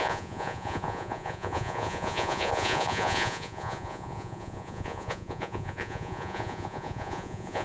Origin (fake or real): fake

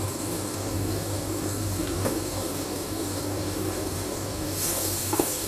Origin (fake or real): fake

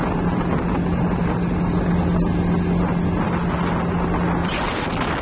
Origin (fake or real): real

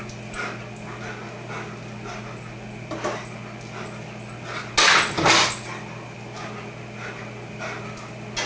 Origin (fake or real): real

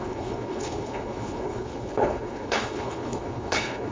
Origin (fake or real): fake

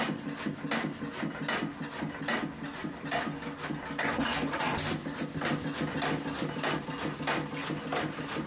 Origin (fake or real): real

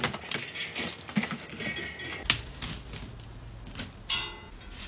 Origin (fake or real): real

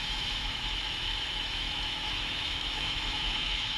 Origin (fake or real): fake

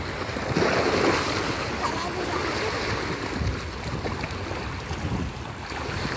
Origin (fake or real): real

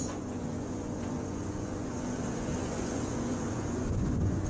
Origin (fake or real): fake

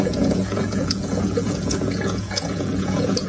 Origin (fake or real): fake